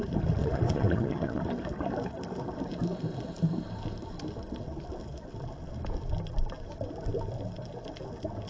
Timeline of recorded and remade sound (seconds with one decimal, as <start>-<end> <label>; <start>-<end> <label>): 0.0-0.4 recorded; 0.4-1.4 remade; 1.4-8.5 recorded